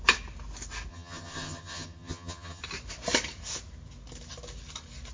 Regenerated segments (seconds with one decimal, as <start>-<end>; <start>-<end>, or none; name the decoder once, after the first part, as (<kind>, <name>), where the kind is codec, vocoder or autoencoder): 0.9-2.6 (vocoder, HiFi-GAN)